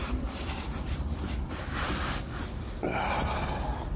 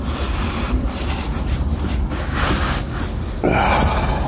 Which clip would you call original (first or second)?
second